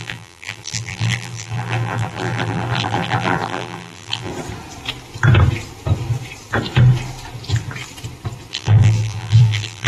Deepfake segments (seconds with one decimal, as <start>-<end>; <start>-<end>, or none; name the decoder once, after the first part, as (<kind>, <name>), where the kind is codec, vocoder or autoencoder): 0.0-4.3 (vocoder, BigVGAN v2); 8.5-9.9